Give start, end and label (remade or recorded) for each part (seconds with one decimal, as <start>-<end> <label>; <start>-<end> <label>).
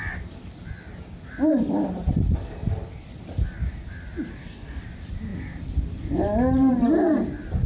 0.0-4.3 recorded; 4.3-4.8 remade; 4.8-7.7 recorded